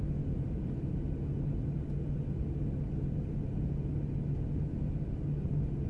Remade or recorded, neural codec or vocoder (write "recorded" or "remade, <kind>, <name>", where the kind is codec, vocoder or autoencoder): recorded